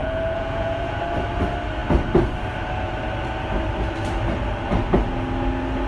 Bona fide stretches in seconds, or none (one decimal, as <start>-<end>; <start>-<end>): 1.0-5.9